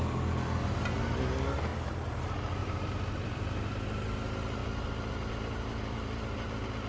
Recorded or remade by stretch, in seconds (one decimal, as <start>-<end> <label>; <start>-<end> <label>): 0.0-1.7 recorded; 1.7-2.2 remade; 2.2-2.6 recorded; 2.6-3.7 remade; 3.7-4.6 recorded; 4.6-5.1 remade; 5.1-6.9 recorded